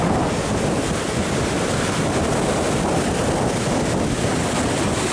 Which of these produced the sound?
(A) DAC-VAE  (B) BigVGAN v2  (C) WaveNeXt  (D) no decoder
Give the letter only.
D